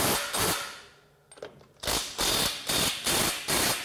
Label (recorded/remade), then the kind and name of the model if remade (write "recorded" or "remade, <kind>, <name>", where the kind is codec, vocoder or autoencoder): recorded